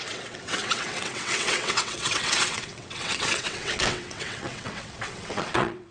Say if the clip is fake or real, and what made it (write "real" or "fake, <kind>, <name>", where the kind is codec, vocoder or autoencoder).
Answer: fake, vocoder, WaveNeXt